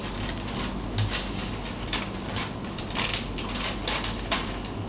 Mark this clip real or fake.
real